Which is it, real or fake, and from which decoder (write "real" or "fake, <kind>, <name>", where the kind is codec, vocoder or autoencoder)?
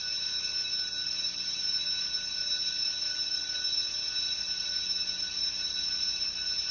real